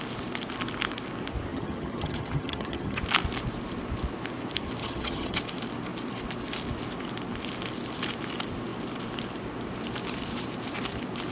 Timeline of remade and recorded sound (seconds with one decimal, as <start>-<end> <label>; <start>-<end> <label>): 0.0-1.5 recorded; 1.5-3.0 remade; 3.0-4.8 recorded; 4.8-5.4 remade; 5.4-11.3 recorded